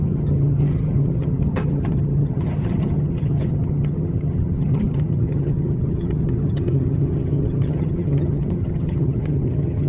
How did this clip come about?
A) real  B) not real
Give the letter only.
B